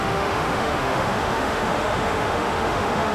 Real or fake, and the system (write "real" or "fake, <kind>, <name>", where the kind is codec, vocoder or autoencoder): fake, autoencoder, DAC-VAE